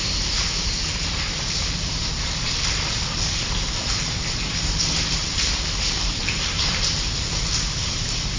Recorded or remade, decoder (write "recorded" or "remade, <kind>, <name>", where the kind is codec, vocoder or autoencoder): remade, vocoder, BigVGAN v2